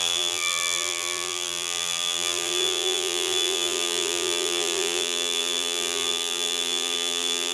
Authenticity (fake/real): fake